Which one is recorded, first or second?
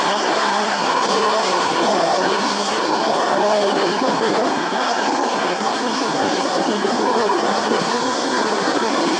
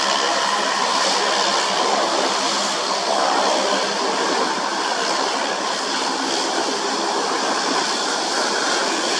second